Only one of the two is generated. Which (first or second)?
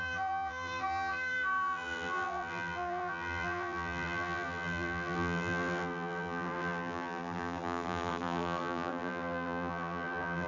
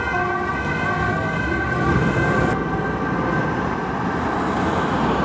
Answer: first